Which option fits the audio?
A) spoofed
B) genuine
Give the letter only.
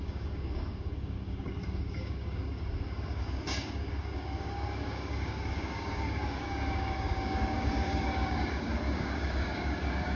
A